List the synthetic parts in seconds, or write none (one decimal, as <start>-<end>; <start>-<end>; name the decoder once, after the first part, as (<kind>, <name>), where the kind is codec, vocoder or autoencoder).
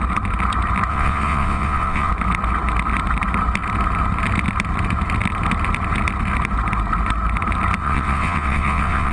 0.9-2.1 (vocoder, WaveNeXt); 7.8-9.1